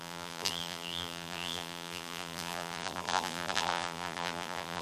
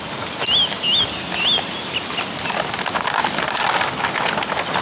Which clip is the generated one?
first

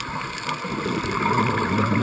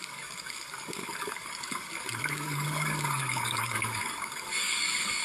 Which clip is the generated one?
second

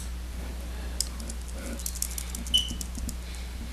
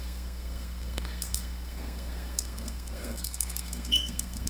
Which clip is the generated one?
second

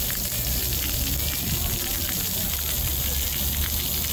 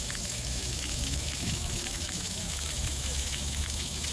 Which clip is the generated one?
second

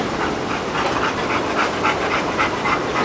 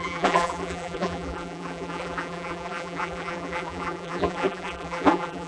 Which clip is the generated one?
second